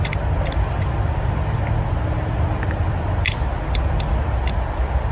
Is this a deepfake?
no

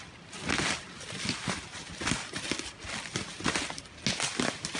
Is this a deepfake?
no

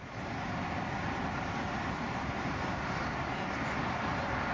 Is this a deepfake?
no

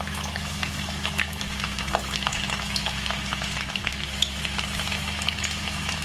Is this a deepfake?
yes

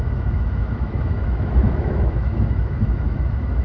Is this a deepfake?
yes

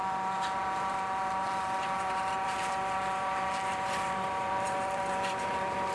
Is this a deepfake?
yes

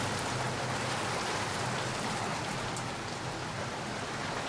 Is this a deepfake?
no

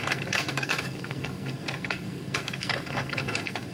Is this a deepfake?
yes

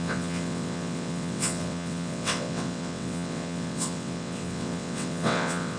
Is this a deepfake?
yes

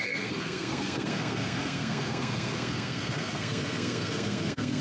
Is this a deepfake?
yes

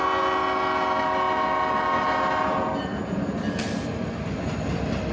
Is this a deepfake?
no